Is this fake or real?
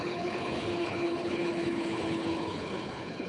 fake